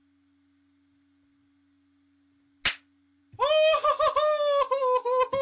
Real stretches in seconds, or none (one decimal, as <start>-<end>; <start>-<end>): 0.0-5.4